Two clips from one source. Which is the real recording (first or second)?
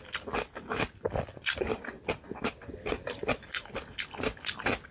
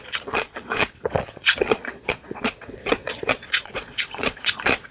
first